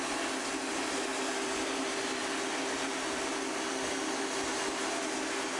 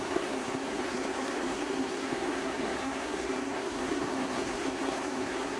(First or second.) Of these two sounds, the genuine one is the first